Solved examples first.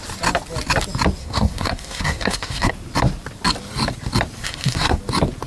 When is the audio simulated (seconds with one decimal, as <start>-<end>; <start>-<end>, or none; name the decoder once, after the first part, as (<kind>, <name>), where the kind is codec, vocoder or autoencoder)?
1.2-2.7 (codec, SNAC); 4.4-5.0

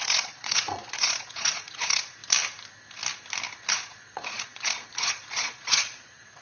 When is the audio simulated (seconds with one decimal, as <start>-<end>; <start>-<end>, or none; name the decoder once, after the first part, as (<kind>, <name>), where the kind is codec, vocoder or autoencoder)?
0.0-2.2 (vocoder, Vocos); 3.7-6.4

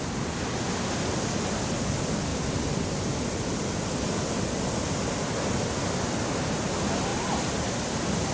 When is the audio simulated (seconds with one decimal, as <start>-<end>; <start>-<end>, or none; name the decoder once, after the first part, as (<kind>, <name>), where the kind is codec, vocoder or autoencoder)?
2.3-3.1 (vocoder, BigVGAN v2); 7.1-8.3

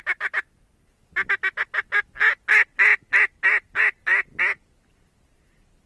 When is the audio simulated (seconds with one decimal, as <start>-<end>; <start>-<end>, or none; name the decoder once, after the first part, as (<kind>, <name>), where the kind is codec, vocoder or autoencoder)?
none

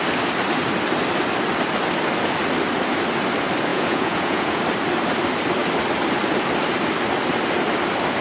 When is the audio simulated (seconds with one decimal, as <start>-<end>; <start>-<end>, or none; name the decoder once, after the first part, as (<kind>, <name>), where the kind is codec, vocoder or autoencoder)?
3.7-4.6 (vocoder, Vocos)

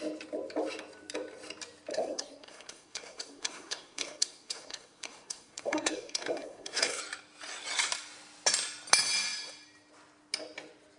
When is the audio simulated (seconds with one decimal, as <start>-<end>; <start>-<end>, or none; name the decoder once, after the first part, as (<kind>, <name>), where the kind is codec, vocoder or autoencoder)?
1.9-7.0 (codec, SNAC)

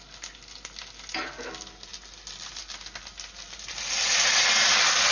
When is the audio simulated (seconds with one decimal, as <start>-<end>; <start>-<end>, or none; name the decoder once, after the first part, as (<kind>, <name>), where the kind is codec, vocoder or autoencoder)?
none

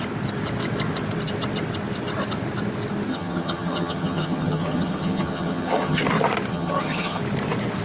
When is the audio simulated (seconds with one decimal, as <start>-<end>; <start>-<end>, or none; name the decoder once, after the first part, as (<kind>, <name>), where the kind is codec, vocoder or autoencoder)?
3.1-6.0 (vocoder, HiFi-GAN); 6.5-7.2